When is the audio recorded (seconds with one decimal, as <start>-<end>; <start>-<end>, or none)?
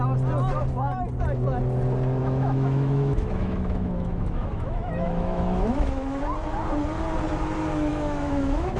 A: 0.0-2.2; 6.2-7.9